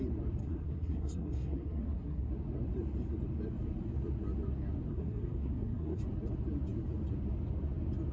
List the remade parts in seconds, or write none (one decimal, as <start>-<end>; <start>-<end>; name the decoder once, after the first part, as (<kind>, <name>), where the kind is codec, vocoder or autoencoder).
0.4-2.3 (codec, SNAC); 4.9-6.0